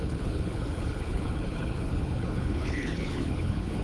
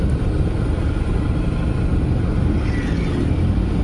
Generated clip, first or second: first